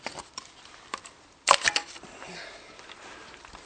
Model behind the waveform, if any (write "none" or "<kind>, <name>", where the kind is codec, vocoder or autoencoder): none